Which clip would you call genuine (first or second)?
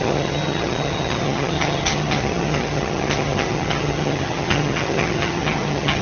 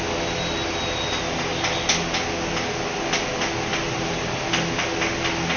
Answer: second